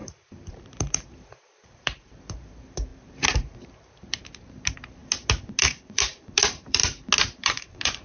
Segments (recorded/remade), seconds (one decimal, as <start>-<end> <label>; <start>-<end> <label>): 0.0-5.0 remade; 5.0-5.6 recorded; 5.6-6.8 remade; 6.8-7.4 recorded; 7.4-8.0 remade